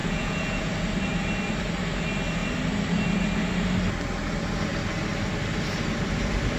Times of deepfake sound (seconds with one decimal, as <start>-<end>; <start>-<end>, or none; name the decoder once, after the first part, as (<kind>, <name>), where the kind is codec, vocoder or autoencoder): 0.0-0.7 (vocoder, Vocos)